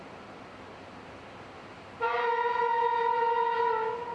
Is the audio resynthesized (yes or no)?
no